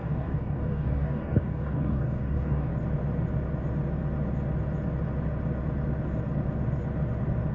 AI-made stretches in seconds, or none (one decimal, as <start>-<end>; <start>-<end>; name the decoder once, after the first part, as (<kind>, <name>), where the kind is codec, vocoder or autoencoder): 0.0-2.7 (codec, DAC)